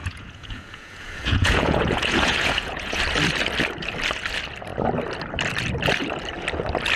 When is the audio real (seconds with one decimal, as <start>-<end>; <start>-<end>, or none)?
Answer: 3.0-7.0